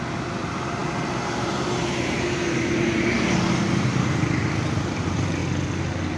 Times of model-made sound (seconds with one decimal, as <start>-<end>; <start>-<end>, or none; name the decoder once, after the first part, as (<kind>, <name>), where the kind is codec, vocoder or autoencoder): 0.0-5.4 (vocoder, BigVGAN v2)